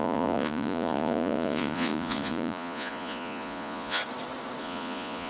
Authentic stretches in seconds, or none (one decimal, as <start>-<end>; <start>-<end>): 4.0-4.6